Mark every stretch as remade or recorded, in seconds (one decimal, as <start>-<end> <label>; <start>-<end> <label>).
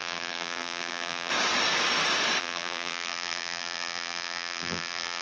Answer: 0.0-1.3 remade; 1.3-2.4 recorded; 2.4-5.2 remade